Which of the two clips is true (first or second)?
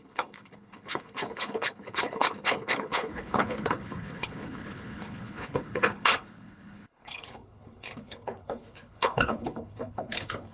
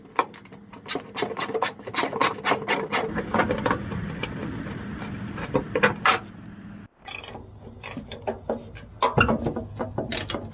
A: second